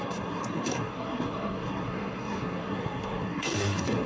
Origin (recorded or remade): remade